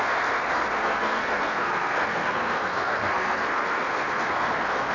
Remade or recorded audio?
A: remade